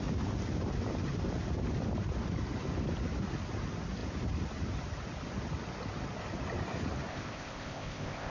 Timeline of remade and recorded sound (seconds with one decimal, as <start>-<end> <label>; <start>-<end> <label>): 0.0-7.1 recorded; 7.1-8.3 remade